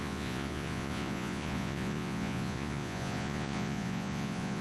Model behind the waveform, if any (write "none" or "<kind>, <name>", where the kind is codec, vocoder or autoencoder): vocoder, Vocos